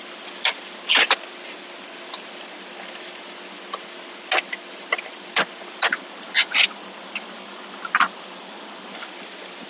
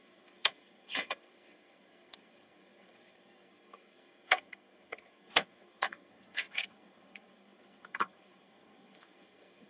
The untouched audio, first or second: first